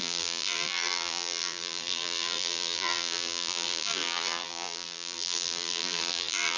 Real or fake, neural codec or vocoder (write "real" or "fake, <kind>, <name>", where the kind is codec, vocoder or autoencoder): fake, vocoder, BigVGAN v2